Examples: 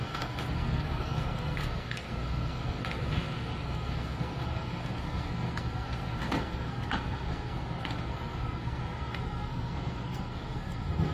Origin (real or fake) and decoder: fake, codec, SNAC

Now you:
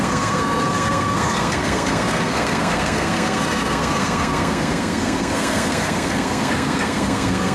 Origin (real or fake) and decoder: fake, codec, SNAC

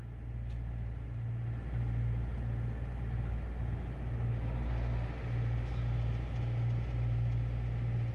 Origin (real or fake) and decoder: real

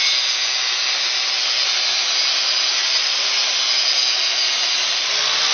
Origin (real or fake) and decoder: real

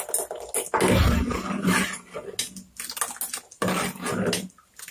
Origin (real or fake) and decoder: real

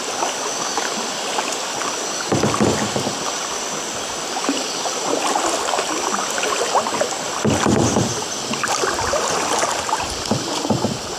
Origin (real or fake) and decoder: real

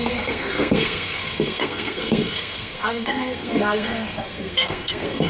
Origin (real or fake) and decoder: fake, codec, SNAC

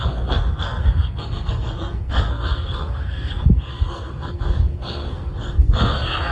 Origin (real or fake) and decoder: fake, codec, SNAC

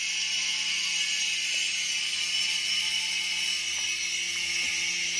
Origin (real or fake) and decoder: real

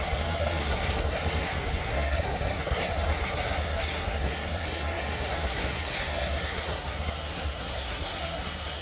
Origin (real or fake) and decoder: fake, codec, SNAC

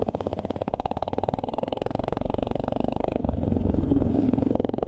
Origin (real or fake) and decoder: fake, codec, SNAC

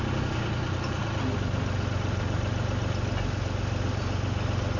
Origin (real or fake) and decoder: real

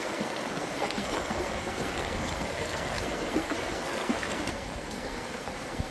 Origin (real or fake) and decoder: fake, codec, SNAC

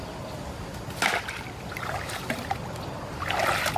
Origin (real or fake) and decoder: real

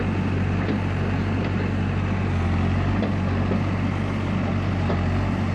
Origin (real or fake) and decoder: real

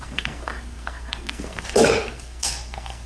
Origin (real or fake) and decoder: fake, codec, SNAC